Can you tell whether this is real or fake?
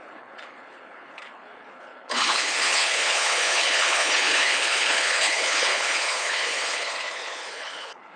fake